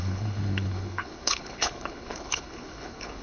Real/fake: fake